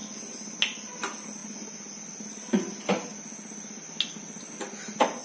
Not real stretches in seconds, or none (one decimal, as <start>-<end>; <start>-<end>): none